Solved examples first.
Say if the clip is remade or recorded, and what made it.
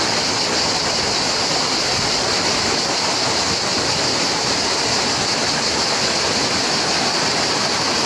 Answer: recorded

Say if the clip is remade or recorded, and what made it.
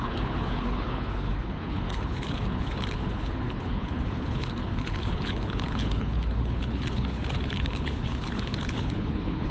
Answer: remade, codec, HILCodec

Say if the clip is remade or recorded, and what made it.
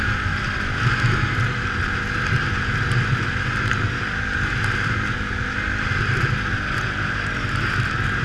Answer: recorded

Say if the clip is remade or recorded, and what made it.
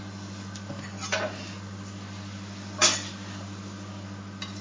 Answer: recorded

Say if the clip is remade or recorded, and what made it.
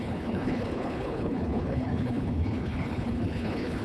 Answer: remade, codec, HILCodec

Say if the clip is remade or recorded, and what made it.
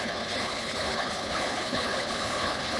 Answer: remade, codec, HILCodec